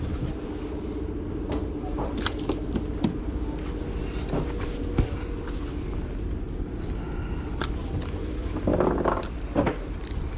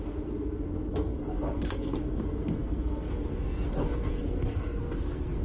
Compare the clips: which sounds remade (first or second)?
second